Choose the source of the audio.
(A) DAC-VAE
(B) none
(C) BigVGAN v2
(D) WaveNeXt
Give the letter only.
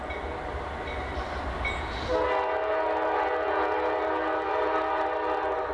B